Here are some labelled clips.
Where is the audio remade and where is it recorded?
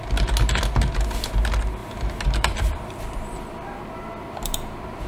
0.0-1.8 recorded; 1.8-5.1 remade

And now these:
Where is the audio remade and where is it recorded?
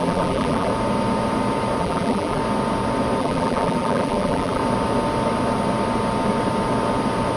0.0-0.7 remade; 0.7-1.8 recorded; 1.8-2.4 remade; 2.4-3.2 recorded; 3.2-4.6 remade; 4.6-7.4 recorded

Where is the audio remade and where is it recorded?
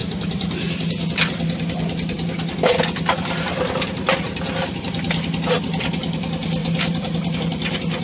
0.0-6.6 recorded; 6.6-7.4 remade; 7.4-8.0 recorded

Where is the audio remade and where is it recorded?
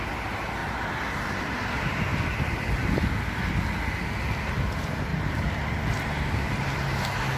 0.0-7.4 recorded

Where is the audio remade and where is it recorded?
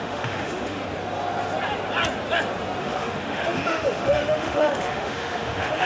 0.0-0.8 remade; 0.8-2.8 recorded; 2.8-5.9 remade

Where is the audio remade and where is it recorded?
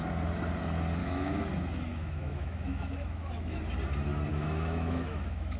0.0-1.0 recorded; 1.0-1.5 remade; 1.5-1.9 recorded; 1.9-3.6 remade; 3.6-4.3 recorded; 4.3-5.6 remade